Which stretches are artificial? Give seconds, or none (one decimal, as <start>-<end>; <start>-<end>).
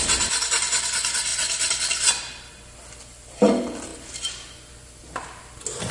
none